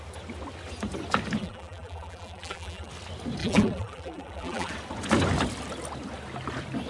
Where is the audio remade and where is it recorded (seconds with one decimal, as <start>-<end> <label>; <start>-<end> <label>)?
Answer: 0.0-1.4 recorded; 1.4-2.9 remade; 2.9-3.4 recorded; 3.4-4.7 remade; 4.7-6.9 recorded